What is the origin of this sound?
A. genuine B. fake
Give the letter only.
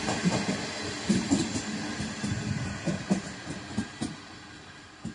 A